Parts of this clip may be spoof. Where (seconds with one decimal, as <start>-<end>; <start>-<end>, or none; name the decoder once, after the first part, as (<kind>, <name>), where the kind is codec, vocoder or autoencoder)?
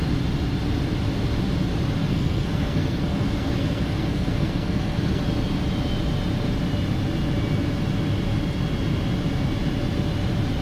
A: 2.0-5.2 (codec, SNAC)